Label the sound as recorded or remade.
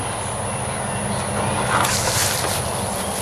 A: recorded